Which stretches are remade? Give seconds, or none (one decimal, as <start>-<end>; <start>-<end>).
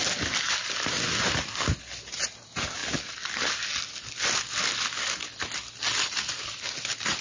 none